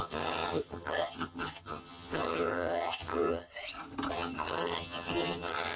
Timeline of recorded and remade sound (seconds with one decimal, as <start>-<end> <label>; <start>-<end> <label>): 0.0-3.5 remade; 3.5-4.1 recorded; 4.1-5.8 remade